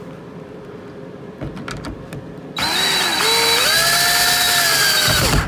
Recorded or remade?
recorded